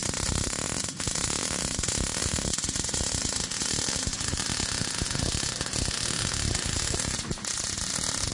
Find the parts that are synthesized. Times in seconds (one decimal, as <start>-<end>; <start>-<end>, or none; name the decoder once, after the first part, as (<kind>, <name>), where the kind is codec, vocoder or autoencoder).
none